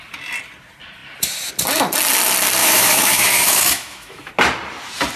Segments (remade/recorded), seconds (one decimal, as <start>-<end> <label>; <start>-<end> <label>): 0.0-2.6 recorded; 2.6-4.3 remade; 4.3-5.2 recorded